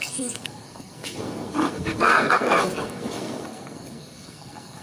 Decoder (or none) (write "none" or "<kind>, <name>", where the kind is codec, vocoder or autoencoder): codec, SNAC